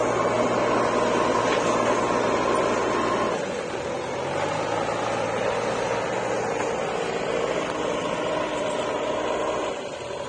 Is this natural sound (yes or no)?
yes